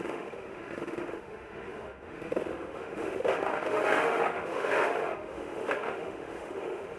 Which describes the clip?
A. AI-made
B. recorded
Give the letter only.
A